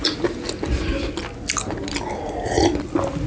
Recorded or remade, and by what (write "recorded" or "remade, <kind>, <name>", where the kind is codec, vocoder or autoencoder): recorded